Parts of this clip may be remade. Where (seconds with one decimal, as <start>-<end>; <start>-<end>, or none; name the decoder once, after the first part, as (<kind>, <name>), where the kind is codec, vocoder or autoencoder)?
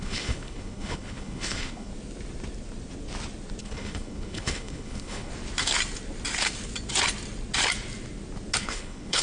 0.0-1.9 (codec, HILCodec); 3.6-5.3; 8.6-9.2